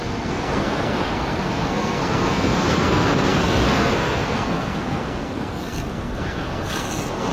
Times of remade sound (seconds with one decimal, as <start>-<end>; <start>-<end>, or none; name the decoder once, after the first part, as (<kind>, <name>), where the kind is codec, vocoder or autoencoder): 0.0-7.3 (codec, SNAC)